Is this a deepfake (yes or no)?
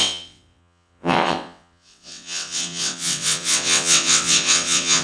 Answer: yes